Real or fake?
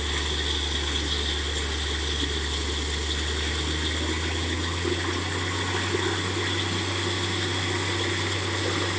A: real